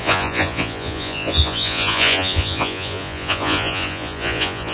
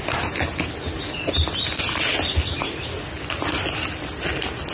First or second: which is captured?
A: second